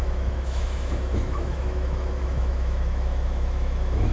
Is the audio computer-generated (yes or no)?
yes